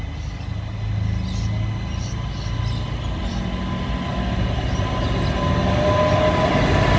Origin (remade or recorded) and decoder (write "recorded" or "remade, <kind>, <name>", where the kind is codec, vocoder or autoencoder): recorded